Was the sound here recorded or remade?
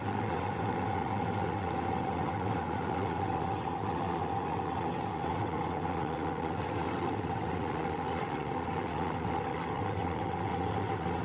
remade